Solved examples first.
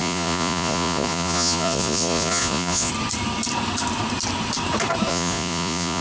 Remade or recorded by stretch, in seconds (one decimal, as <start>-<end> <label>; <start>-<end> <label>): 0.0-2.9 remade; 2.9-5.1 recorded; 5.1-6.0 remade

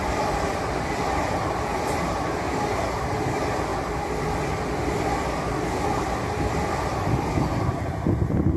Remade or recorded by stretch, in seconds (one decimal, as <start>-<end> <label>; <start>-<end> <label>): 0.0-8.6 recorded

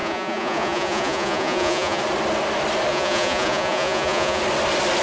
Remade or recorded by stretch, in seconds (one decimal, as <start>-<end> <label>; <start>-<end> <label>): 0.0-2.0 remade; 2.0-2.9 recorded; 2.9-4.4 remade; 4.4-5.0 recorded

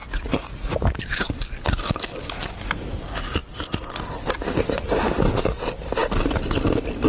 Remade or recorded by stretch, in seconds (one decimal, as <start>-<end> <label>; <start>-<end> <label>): 0.0-1.0 remade; 1.0-7.1 recorded